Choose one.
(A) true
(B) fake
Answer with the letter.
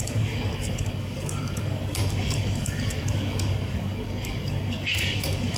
B